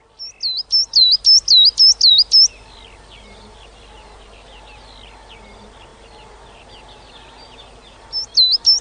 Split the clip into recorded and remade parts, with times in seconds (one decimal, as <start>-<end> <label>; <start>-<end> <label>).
0.0-8.8 recorded